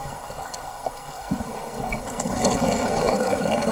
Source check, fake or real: fake